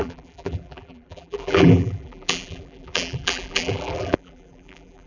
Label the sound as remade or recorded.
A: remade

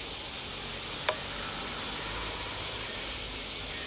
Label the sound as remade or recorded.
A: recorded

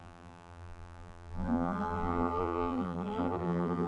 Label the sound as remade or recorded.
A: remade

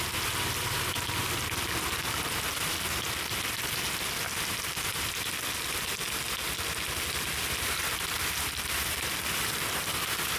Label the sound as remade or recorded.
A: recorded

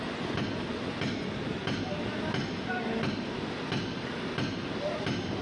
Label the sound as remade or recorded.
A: recorded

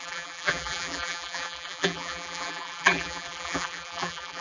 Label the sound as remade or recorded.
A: remade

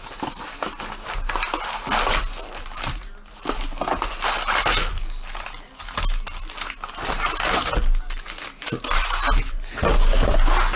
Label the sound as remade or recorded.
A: recorded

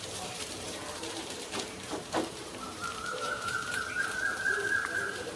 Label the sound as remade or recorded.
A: remade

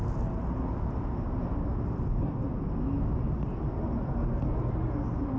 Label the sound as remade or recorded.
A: recorded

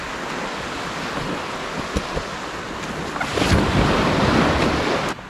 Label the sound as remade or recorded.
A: recorded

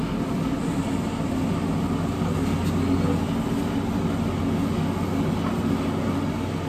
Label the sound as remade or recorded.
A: recorded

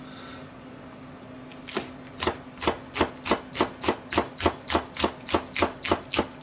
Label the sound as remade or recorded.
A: recorded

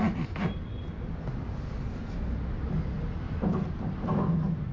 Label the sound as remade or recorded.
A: recorded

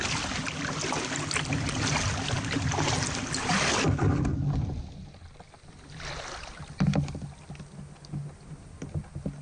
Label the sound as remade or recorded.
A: recorded